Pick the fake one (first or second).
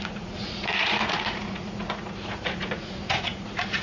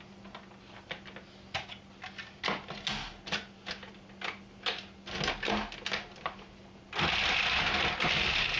first